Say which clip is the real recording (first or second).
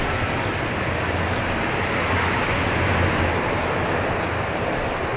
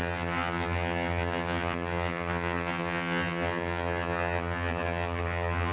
first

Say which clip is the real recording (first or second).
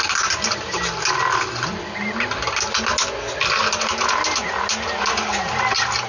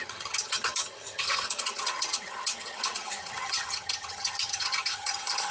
first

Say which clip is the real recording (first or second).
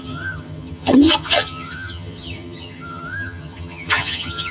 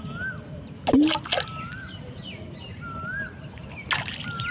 second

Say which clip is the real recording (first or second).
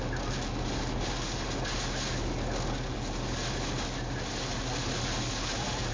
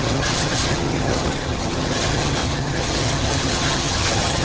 first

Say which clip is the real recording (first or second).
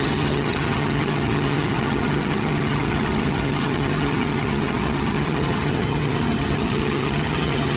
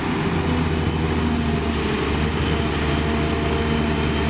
second